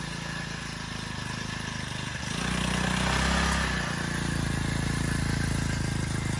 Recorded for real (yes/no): yes